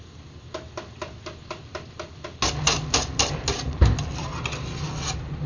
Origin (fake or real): real